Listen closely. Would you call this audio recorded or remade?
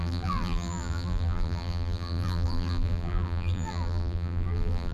remade